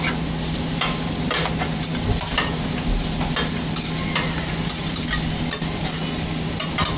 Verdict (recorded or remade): recorded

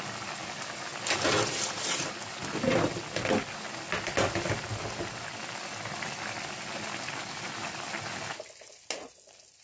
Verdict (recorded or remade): recorded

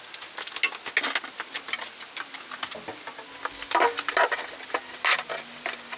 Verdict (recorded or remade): recorded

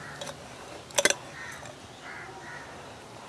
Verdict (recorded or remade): recorded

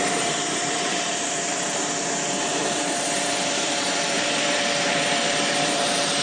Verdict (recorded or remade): remade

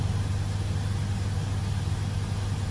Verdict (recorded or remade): recorded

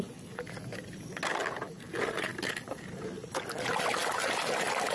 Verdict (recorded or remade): recorded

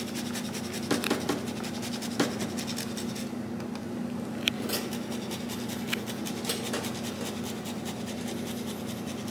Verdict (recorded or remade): recorded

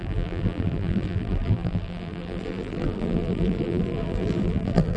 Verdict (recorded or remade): remade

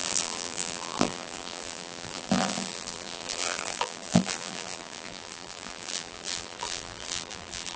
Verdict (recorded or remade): remade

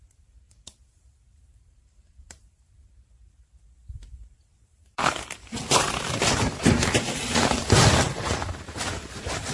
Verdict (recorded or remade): remade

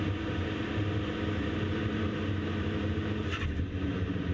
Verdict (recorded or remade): remade